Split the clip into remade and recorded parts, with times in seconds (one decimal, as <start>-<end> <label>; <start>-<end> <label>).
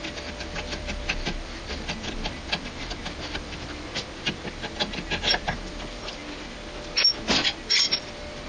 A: 0.0-6.2 remade; 6.2-7.7 recorded; 7.7-8.5 remade